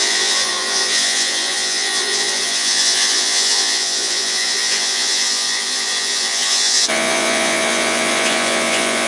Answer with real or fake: fake